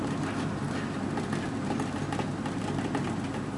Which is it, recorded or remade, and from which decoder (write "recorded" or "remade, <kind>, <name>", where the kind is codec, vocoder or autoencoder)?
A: recorded